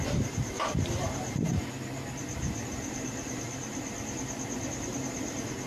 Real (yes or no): no